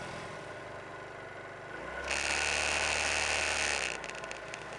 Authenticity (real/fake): real